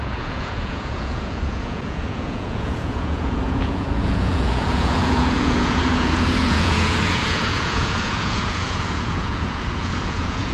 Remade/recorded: remade